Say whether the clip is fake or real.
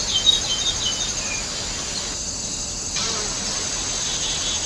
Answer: real